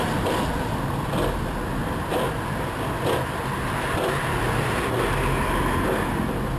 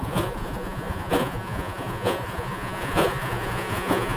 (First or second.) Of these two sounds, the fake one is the second